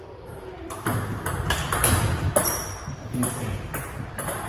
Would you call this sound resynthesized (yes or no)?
no